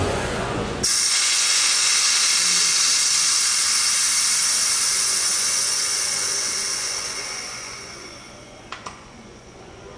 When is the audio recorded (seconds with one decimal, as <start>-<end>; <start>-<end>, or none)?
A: 1.9-4.9